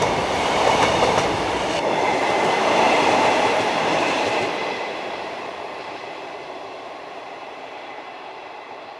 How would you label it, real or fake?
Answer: fake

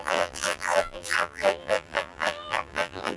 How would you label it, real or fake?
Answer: fake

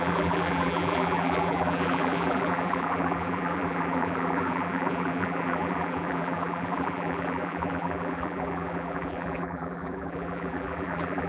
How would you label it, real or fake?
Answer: fake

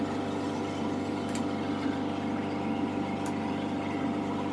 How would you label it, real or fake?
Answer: real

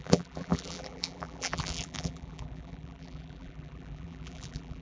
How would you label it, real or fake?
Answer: fake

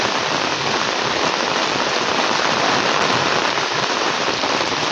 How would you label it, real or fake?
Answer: fake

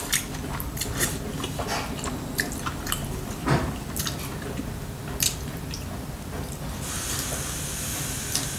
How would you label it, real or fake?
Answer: real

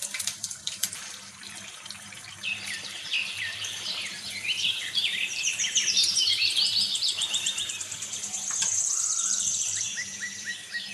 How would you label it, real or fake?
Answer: fake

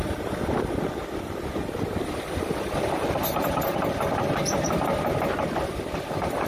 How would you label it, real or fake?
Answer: real